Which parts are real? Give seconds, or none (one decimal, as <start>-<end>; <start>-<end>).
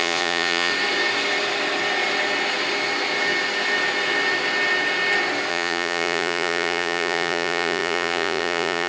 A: 0.7-5.5